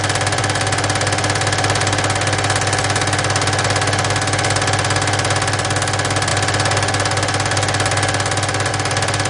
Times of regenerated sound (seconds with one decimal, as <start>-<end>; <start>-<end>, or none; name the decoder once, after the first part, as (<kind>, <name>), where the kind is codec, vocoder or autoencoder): none